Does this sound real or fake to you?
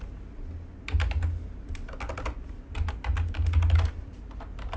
real